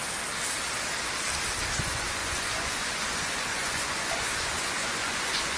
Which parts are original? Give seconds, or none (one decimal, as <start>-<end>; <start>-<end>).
0.0-1.7